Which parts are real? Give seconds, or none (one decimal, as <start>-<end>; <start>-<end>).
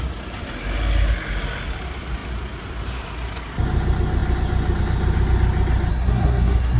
0.0-5.9